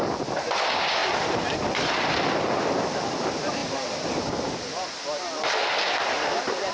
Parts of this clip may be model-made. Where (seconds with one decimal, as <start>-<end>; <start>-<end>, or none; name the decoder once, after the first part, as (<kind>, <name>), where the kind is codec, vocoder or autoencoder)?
none